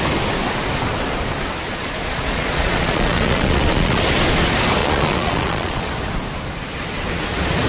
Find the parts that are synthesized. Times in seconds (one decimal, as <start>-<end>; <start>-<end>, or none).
1.7-4.0; 4.8-5.9